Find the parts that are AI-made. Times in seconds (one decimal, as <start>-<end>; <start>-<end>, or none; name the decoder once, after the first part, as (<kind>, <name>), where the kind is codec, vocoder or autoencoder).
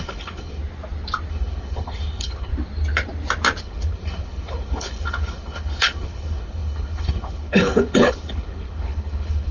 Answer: 0.0-0.6 (codec, HILCodec); 1.3-2.5; 3.6-9.5